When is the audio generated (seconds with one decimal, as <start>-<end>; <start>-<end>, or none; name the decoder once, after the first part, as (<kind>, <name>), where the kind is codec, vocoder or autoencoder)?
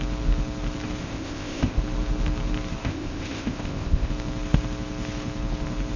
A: 1.0-1.8 (codec, ZipCodec); 2.8-4.1